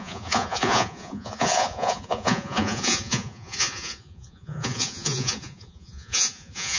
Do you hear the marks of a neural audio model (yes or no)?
yes